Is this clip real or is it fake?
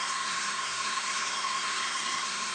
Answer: fake